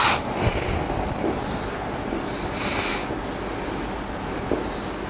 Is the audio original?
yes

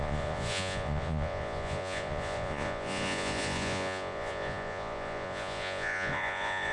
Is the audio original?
no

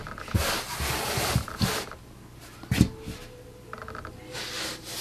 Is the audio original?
yes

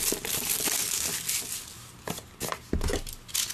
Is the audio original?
yes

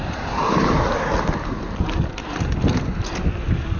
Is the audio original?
yes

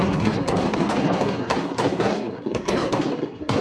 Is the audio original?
no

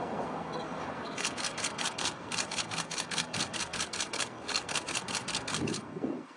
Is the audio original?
no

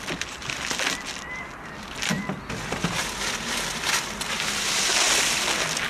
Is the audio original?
yes